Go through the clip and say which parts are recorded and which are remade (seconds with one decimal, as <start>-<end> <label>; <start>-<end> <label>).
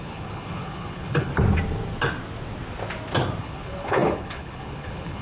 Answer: 0.0-1.3 remade; 1.3-3.4 recorded; 3.4-5.2 remade